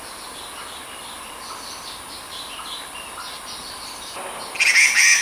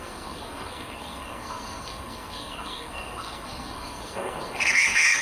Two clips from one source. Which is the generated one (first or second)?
second